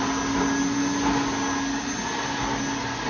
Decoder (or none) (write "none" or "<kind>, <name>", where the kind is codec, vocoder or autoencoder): none